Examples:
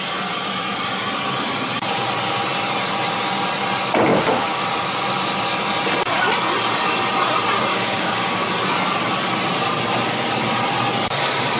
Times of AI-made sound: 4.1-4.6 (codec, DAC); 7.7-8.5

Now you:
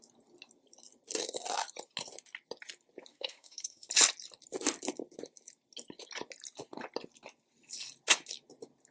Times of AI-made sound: 3.1-3.9 (autoencoder, DAC-VAE)

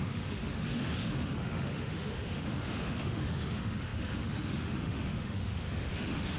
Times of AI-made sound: 0.0-6.4 (autoencoder, DAC-VAE)

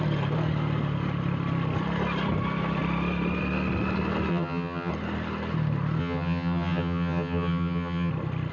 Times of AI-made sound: 4.3-4.9 (vocoder, HiFi-GAN); 6.0-8.1

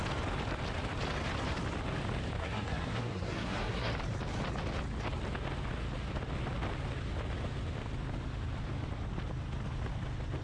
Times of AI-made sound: 2.4-3.9 (codec, SNAC)

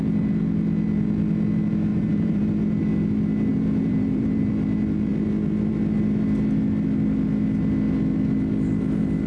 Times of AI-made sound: 1.9-2.4 (vocoder, BigVGAN v2); 3.5-4.5